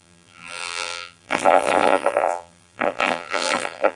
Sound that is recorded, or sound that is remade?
remade